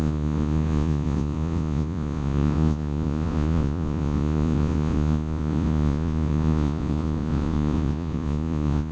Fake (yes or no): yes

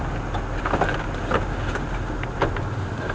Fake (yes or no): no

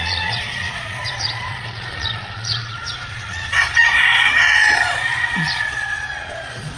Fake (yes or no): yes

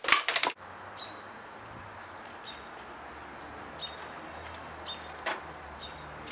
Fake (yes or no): no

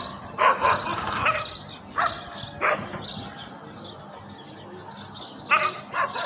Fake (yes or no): no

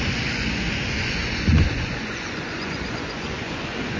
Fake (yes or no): yes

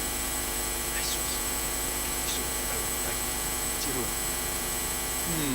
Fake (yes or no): yes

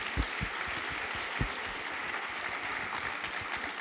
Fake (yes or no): no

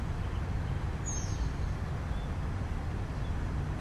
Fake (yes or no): no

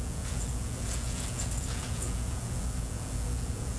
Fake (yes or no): yes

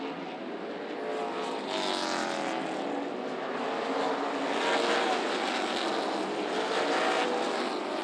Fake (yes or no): no